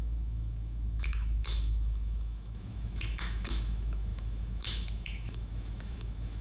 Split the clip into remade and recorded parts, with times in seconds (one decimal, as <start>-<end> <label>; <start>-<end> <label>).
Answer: 0.0-6.4 remade